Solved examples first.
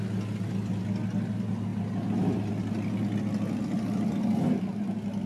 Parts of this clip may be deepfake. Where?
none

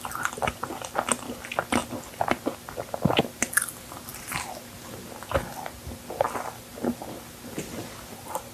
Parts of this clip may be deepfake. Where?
none

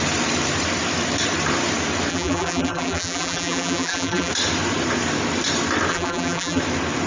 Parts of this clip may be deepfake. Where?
2.1-4.3 (vocoder, BigVGAN v2); 5.9-6.6